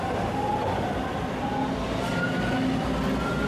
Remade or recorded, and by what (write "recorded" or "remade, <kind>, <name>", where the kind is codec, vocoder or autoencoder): recorded